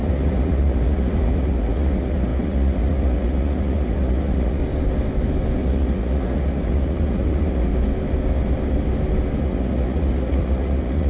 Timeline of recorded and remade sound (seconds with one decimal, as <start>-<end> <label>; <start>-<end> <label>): 0.0-4.6 remade; 4.6-5.6 recorded; 5.6-7.7 remade; 7.7-9.4 recorded; 9.4-11.1 remade